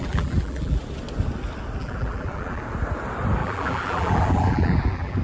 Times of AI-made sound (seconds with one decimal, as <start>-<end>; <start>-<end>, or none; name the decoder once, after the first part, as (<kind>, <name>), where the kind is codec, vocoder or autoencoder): 0.0-0.8 (vocoder, BigVGAN v2); 1.8-2.6; 3.4-5.2

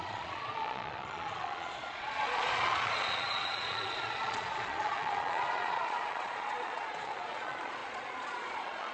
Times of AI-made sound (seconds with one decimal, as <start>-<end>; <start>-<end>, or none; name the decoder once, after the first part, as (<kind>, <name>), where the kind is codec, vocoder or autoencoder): 0.0-8.9 (vocoder, Vocos)

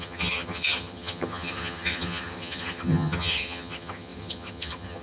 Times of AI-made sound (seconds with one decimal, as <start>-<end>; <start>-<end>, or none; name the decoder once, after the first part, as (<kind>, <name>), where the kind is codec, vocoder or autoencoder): 0.0-5.0 (vocoder, HiFi-GAN)

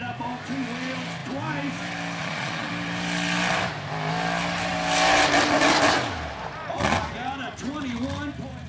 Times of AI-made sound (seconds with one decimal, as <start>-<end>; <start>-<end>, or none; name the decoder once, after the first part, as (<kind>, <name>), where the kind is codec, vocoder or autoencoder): 2.2-2.7 (vocoder, Vocos)

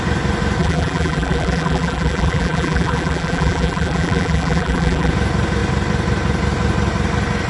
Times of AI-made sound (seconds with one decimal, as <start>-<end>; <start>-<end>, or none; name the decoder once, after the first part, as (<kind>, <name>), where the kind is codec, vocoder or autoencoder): 0.6-5.1 (vocoder, BigVGAN v2)

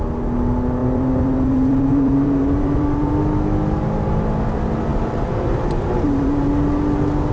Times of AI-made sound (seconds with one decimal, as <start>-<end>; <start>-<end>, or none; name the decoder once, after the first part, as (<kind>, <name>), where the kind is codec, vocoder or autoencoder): 0.8-3.1 (vocoder, BigVGAN v2); 4.9-6.5

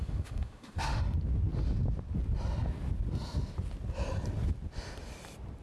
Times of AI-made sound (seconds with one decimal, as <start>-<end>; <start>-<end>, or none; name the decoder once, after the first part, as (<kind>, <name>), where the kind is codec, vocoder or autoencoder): 0.0-1.0 (autoencoder, DAC-VAE)